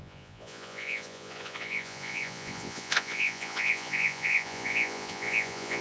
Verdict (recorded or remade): remade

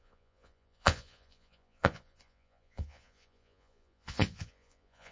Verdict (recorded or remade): remade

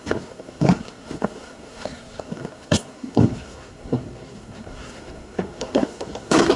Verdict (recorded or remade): remade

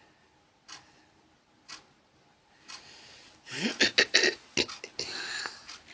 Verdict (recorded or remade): recorded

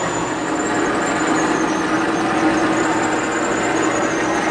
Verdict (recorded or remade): recorded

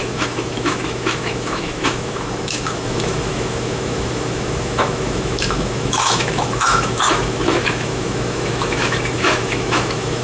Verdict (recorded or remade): remade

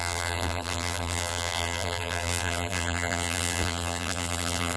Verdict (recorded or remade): remade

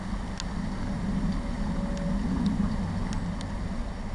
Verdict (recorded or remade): recorded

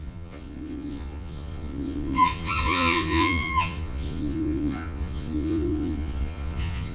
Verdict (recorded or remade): remade